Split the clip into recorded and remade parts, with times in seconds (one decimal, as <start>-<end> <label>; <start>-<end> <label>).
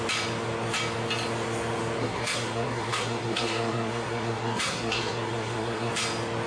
0.0-2.0 recorded; 2.0-5.9 remade; 5.9-6.5 recorded